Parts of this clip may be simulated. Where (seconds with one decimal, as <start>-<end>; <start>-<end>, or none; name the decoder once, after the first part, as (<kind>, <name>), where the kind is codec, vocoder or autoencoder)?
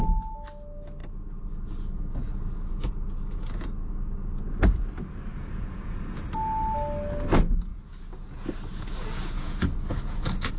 1.0-4.4 (vocoder, Vocos); 5.3-6.0; 7.7-10.6